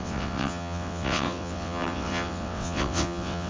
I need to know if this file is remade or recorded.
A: remade